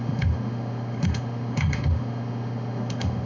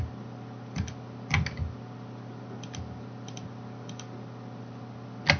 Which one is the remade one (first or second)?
first